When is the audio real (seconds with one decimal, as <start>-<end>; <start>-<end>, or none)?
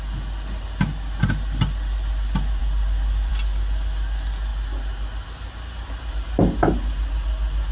0.0-7.7